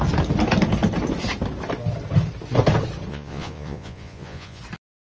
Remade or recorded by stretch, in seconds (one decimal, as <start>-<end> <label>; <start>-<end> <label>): 0.0-3.1 recorded; 3.1-4.6 remade; 4.6-5.1 recorded